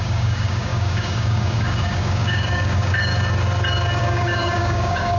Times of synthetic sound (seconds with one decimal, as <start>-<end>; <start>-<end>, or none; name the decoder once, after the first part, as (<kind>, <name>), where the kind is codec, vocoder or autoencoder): 0.0-3.1 (codec, DAC); 4.0-5.2